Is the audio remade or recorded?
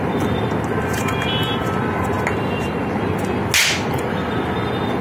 recorded